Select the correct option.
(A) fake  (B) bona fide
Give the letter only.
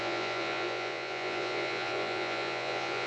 A